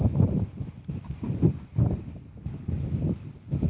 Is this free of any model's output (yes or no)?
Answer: no